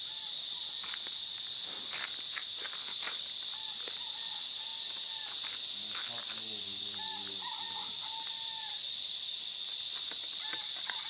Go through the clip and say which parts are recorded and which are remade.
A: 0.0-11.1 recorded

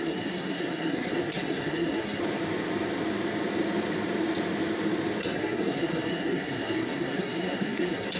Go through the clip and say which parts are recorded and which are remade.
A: 0.0-2.2 remade; 2.2-5.2 recorded; 5.2-8.2 remade

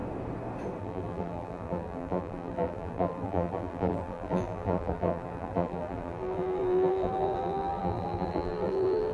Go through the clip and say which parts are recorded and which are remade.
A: 0.0-0.8 recorded; 0.8-9.1 remade

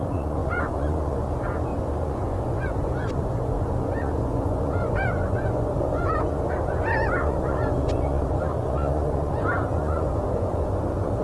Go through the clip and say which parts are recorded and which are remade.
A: 0.0-11.2 remade

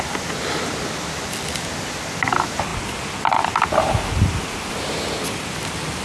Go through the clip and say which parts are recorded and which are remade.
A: 0.0-6.0 recorded

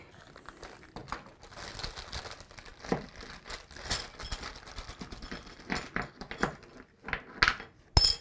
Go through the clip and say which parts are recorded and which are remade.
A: 0.0-8.2 recorded

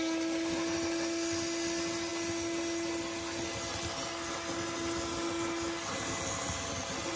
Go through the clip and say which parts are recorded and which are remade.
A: 0.0-7.2 recorded